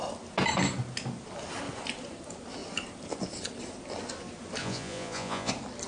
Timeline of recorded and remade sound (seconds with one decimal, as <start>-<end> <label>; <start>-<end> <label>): 0.0-4.6 recorded; 4.6-5.5 remade; 5.5-5.9 recorded